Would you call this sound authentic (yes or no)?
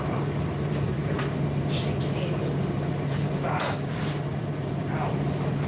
no